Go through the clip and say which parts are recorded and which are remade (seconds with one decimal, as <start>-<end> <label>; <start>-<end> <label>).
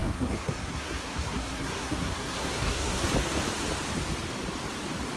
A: 0.0-3.1 remade; 3.1-5.2 recorded